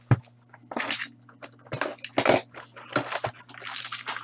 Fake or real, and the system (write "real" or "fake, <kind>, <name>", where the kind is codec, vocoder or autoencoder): real